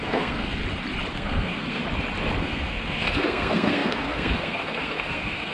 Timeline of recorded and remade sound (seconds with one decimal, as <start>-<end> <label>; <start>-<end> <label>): 0.0-0.6 remade; 0.6-1.1 recorded; 1.1-1.8 remade; 1.8-2.4 recorded; 2.4-5.5 remade

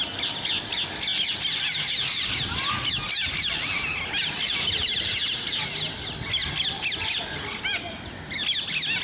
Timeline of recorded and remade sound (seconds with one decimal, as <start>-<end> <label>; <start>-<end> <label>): 0.0-9.0 recorded